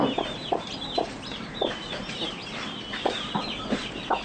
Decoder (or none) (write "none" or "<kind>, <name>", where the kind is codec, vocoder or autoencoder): vocoder, BigVGAN v2